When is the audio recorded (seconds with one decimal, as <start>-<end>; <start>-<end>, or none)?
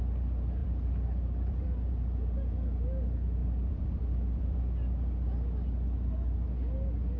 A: 0.0-0.6; 1.9-3.4; 4.6-7.2